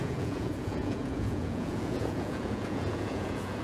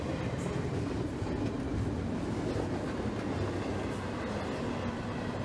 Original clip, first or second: second